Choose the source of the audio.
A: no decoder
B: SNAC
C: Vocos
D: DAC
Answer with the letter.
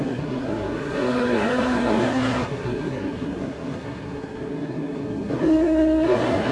B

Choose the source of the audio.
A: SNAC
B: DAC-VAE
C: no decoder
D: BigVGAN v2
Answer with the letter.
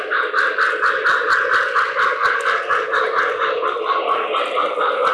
C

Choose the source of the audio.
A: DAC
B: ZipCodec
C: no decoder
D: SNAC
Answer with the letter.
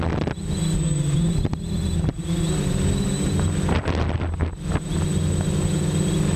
C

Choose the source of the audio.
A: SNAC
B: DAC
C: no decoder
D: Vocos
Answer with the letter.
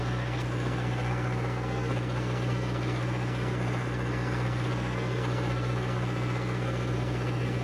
A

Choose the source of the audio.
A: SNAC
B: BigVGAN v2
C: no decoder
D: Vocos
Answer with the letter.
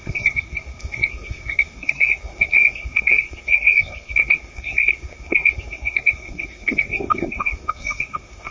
A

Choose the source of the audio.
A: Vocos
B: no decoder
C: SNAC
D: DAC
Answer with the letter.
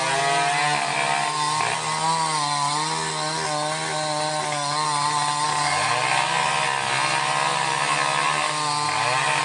B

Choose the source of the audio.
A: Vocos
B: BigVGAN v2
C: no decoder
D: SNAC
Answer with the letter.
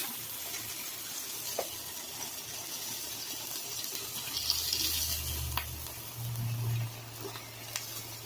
C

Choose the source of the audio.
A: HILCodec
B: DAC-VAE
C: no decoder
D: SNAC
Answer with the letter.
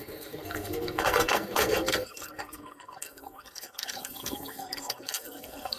D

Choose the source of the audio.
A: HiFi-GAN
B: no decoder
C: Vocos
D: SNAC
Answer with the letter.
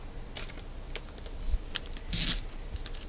B